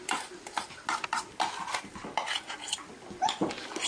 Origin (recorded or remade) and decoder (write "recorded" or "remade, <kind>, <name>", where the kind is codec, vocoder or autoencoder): recorded